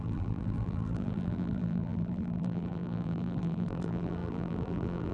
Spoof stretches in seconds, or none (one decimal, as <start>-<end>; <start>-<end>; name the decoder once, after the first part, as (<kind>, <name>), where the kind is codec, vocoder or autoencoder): 0.0-5.1 (vocoder, BigVGAN v2)